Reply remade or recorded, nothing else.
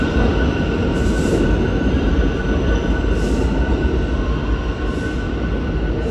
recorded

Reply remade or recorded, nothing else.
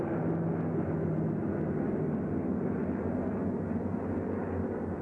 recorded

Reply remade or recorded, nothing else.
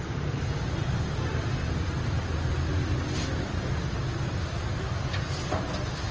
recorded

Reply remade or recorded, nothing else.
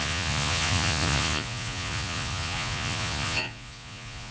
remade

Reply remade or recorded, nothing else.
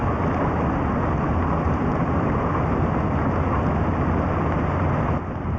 recorded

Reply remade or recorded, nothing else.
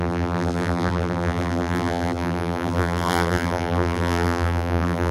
remade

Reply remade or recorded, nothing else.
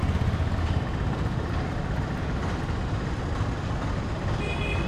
recorded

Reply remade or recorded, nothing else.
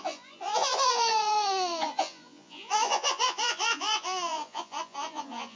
remade